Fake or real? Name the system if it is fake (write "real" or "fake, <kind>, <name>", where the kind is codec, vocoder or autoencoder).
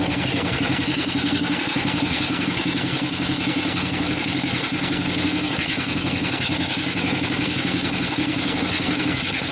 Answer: fake, codec, SNAC